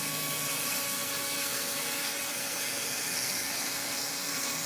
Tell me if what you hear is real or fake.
fake